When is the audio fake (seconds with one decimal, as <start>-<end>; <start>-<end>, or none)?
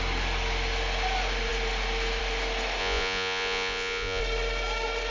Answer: 2.8-4.2